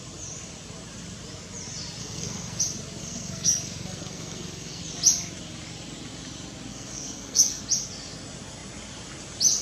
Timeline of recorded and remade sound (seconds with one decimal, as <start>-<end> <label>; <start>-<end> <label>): 0.0-2.0 recorded; 2.0-2.6 remade; 2.6-3.0 recorded; 3.0-4.8 remade; 4.8-6.7 recorded; 6.7-7.6 remade; 7.6-9.6 recorded